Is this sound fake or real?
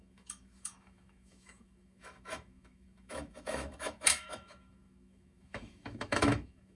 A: fake